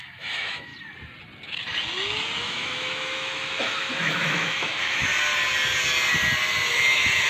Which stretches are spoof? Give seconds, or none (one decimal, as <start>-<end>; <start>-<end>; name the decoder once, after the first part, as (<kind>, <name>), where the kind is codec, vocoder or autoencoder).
0.0-0.7 (autoencoder, DAC-VAE); 2.4-5.1; 6.7-7.3